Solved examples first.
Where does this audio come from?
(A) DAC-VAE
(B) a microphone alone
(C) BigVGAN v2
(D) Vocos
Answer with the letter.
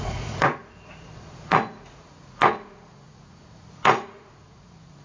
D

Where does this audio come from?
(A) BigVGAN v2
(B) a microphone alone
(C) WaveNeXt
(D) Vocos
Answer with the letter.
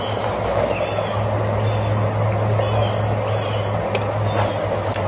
B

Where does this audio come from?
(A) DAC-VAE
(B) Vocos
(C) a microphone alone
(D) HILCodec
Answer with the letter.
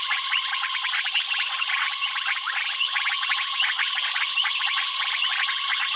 B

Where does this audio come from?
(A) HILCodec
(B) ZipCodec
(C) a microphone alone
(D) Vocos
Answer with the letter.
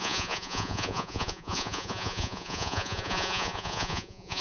D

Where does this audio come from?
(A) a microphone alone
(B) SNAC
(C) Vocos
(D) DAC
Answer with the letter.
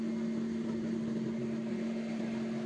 A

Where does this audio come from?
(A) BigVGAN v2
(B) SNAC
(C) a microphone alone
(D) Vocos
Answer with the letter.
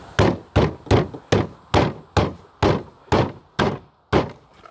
C